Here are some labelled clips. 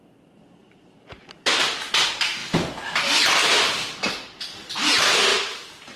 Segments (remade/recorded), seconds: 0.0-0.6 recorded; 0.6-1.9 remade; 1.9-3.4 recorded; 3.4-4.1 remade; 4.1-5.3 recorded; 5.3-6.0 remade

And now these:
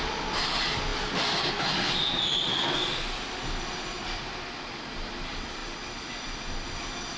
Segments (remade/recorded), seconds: 0.0-7.2 recorded

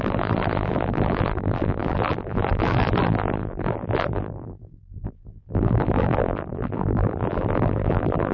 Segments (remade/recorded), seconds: 0.0-8.3 remade

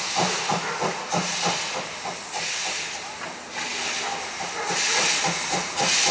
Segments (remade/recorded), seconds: 0.0-6.1 recorded